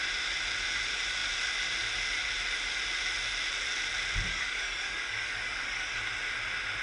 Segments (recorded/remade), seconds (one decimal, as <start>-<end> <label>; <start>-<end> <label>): 0.0-4.3 recorded; 4.3-6.0 remade; 6.0-6.8 recorded